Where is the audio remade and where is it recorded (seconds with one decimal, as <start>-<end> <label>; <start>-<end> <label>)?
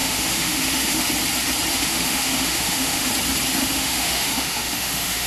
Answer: 0.0-1.1 remade; 1.1-1.7 recorded; 1.7-3.1 remade; 3.1-3.6 recorded; 3.6-5.3 remade